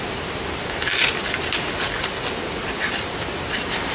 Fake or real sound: real